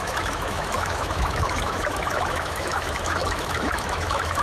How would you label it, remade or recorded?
remade